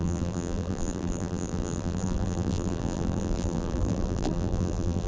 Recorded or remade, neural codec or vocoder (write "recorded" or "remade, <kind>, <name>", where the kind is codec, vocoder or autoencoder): remade, vocoder, BigVGAN v2